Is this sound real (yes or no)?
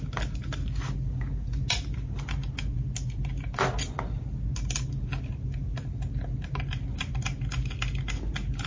yes